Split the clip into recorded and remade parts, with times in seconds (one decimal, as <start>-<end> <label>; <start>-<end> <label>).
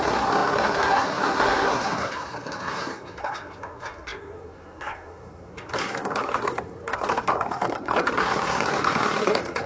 0.0-9.7 remade